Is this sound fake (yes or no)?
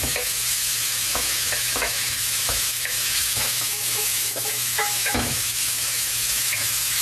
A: yes